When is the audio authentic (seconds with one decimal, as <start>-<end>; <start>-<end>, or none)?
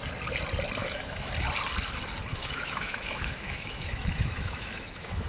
0.0-0.8; 1.3-2.3